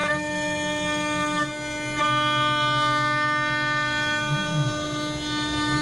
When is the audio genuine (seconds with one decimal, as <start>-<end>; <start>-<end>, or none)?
0.0-5.8